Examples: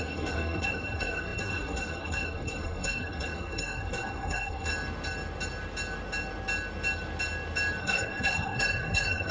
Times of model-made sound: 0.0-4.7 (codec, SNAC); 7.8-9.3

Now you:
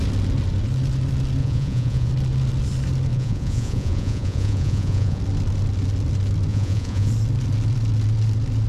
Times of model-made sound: 1.4-2.1 (vocoder, Vocos); 3.1-5.2; 6.5-7.1

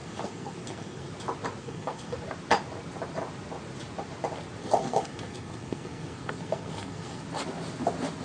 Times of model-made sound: 0.0-1.1 (codec, SNAC); 1.6-2.2; 4.6-7.2

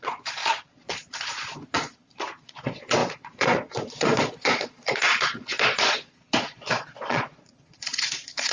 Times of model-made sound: 0.0-8.5 (vocoder, Vocos)

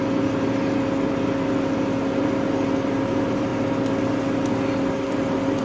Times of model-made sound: none

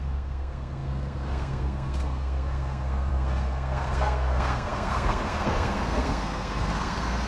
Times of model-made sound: 0.0-7.3 (codec, SNAC)